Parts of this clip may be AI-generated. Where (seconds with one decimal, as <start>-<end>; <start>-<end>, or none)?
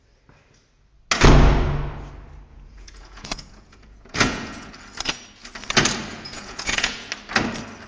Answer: 2.5-4.7; 6.1-7.1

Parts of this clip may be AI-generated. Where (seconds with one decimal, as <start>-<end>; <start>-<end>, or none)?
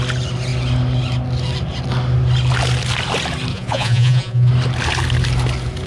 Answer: 3.5-4.5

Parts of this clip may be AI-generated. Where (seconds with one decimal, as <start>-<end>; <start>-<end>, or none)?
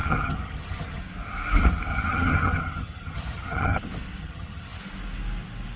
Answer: 0.0-1.0; 1.9-3.8; 4.2-4.8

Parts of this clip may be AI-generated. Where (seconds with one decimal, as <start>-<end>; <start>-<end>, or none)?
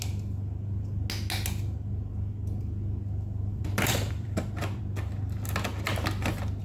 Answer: 3.5-4.8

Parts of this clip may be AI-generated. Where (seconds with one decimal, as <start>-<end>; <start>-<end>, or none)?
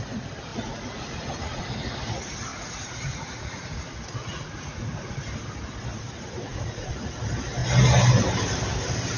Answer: 0.5-1.6; 2.5-5.2; 6.5-7.1